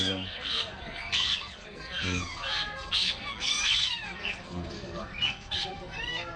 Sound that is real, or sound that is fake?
fake